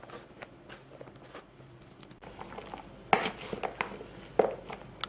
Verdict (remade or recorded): recorded